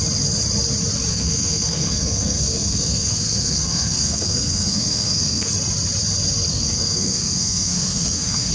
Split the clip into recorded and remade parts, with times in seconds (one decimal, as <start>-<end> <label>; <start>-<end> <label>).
0.0-1.1 recorded; 1.1-5.5 remade; 5.5-6.5 recorded; 6.5-8.5 remade